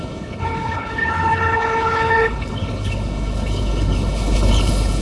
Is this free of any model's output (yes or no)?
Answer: no